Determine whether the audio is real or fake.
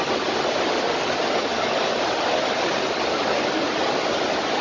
real